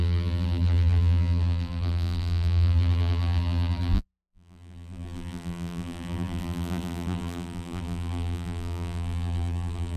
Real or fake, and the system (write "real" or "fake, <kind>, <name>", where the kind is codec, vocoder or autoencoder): fake, vocoder, BigVGAN v2